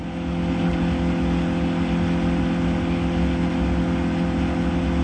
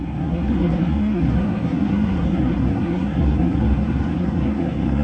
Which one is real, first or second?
first